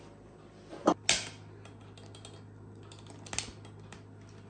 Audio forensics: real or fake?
real